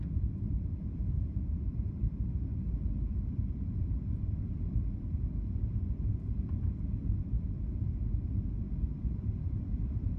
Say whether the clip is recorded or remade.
remade